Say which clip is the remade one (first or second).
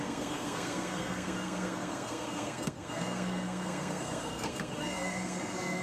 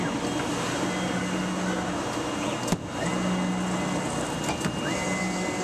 first